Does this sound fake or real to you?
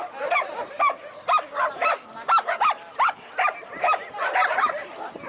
real